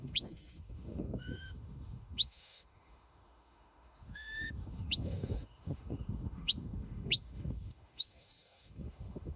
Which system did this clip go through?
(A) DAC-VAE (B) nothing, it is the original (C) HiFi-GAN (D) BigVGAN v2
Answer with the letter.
A